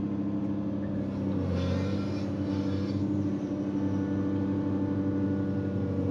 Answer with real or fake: real